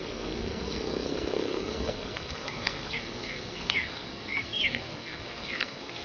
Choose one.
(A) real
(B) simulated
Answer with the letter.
B